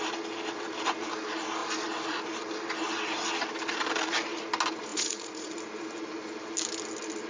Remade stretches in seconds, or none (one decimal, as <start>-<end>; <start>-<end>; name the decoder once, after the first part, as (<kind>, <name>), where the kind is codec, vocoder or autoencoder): 4.9-5.5 (vocoder, Vocos)